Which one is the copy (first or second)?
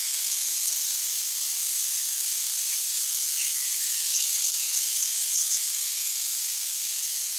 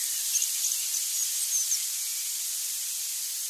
first